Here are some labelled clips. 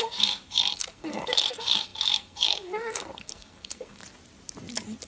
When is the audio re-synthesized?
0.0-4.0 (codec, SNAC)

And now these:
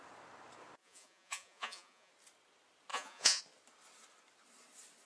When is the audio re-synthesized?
0.8-2.1 (vocoder, Vocos); 2.9-3.4

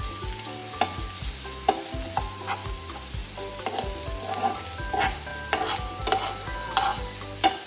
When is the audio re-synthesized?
none